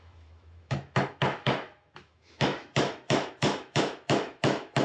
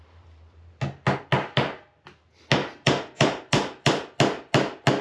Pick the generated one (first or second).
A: first